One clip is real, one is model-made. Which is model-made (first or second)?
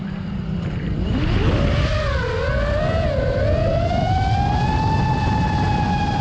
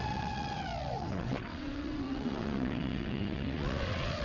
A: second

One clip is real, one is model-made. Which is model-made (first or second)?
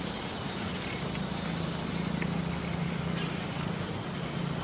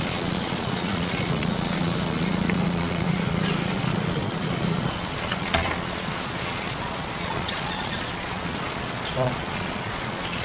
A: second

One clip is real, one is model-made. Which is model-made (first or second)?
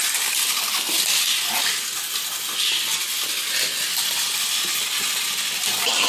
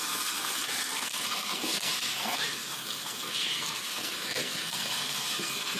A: second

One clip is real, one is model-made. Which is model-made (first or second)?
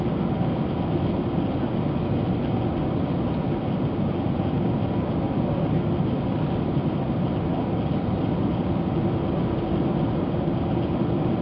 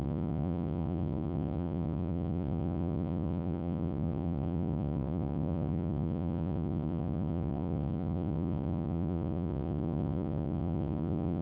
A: second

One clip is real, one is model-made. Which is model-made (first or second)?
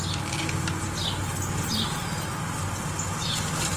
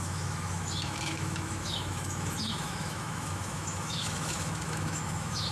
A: second